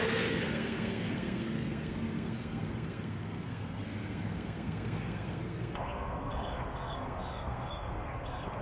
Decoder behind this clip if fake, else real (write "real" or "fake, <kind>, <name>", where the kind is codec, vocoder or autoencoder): fake, codec, SNAC